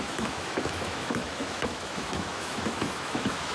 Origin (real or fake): fake